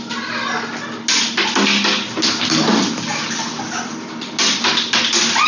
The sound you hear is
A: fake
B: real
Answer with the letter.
B